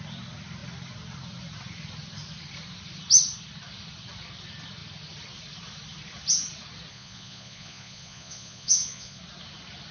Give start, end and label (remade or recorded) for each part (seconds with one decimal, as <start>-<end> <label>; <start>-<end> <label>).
0.0-6.9 recorded; 6.9-9.2 remade; 9.2-9.9 recorded